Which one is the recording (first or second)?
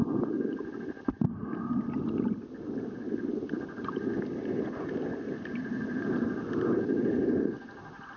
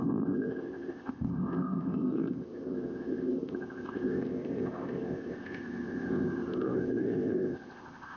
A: first